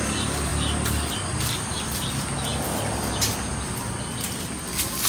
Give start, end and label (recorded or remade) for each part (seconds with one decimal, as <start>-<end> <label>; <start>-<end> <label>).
0.0-5.1 recorded